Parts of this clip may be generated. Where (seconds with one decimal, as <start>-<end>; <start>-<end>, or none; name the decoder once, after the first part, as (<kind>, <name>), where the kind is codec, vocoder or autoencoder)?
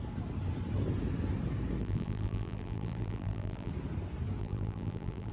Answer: 1.8-3.7 (vocoder, BigVGAN v2); 4.4-5.3